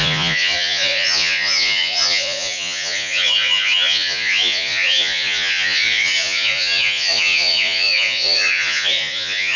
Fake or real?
fake